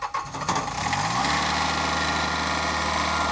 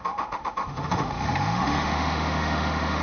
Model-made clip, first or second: second